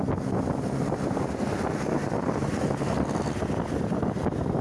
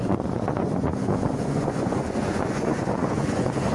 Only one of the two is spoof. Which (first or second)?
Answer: second